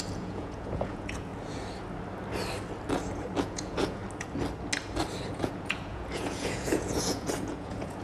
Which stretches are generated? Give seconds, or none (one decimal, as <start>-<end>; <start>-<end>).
0.0-1.3; 3.4-4.0; 5.3-8.0